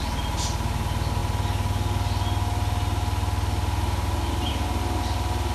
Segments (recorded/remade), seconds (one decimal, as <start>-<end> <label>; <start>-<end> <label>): 0.0-5.5 recorded